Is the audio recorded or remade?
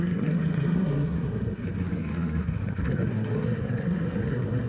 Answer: remade